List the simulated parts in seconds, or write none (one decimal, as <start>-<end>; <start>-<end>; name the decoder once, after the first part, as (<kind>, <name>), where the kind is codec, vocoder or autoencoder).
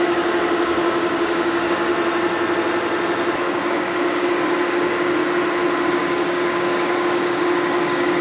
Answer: 0.0-1.9 (codec, DAC); 3.4-5.2; 5.9-8.2